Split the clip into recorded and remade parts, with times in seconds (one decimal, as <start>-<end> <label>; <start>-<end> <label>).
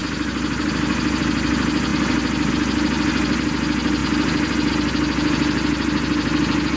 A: 0.0-6.8 recorded